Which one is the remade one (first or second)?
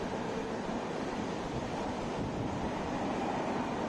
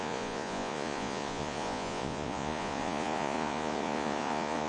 second